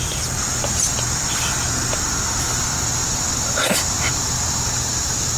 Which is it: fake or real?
real